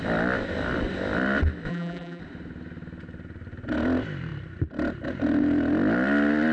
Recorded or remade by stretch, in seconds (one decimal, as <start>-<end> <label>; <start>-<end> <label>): 0.0-1.7 recorded; 1.7-2.2 remade; 2.2-6.5 recorded